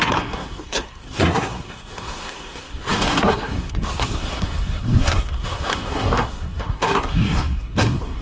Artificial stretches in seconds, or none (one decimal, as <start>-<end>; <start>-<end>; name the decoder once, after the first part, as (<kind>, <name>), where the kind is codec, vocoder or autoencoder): 0.0-8.2 (codec, SNAC)